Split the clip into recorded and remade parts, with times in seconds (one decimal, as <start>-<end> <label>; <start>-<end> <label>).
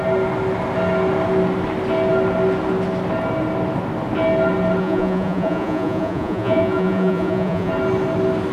0.0-4.8 recorded; 4.8-7.7 remade; 7.7-8.5 recorded